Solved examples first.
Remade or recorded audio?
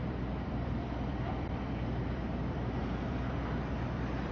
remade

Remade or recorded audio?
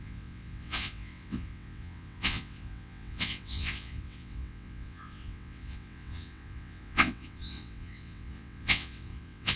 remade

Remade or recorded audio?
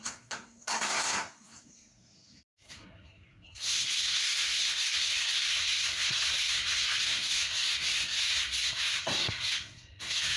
remade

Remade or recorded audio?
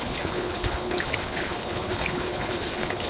remade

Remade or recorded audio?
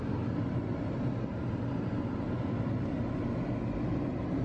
recorded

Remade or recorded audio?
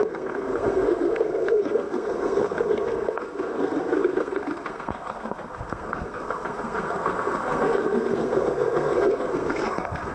remade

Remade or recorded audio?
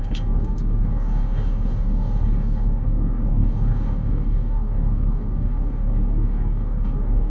remade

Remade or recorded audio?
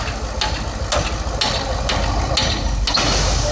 recorded